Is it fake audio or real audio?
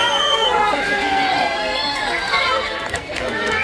fake